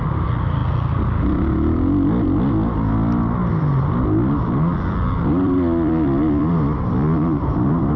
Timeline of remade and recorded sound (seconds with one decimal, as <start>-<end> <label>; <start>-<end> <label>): 0.0-0.6 remade; 0.6-3.5 recorded; 3.5-8.0 remade